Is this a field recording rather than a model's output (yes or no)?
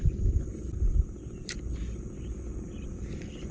no